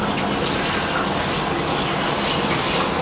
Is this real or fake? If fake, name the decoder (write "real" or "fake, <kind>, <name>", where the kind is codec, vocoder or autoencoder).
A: real